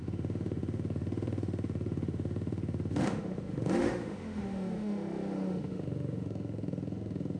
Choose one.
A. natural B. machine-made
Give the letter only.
B